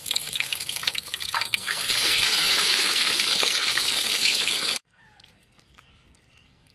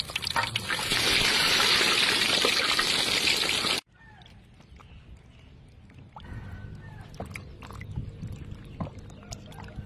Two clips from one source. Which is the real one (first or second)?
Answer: second